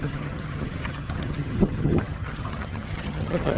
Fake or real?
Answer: fake